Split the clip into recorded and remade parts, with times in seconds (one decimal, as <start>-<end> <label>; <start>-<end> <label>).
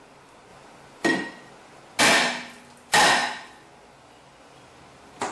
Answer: 0.0-5.3 recorded